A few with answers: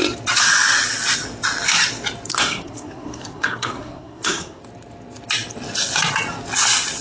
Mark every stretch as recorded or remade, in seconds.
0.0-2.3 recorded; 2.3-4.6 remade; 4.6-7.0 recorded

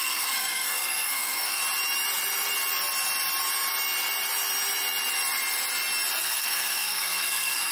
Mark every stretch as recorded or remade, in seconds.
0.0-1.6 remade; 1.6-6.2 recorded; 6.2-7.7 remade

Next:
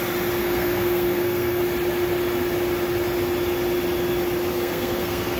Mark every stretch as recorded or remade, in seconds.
0.0-0.4 recorded; 0.4-1.6 remade; 1.6-4.5 recorded; 4.5-5.4 remade

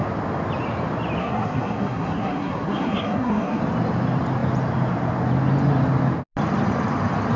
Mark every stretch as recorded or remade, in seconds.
0.0-1.2 recorded; 1.2-3.6 remade; 3.6-7.4 recorded